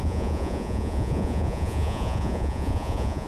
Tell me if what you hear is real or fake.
fake